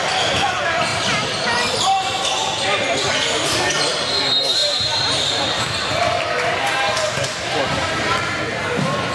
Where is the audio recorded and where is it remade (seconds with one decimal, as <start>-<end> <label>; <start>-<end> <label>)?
0.0-0.9 recorded; 0.9-2.5 remade; 2.5-4.6 recorded; 4.6-5.4 remade; 5.4-9.1 recorded

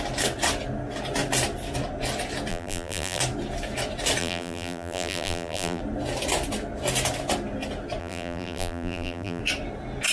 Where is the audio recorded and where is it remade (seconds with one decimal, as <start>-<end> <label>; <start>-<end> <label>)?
0.0-2.5 recorded; 2.5-3.2 remade; 3.2-4.2 recorded; 4.2-5.8 remade; 5.8-8.0 recorded; 8.0-9.4 remade; 9.4-10.1 recorded